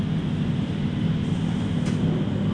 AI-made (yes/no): no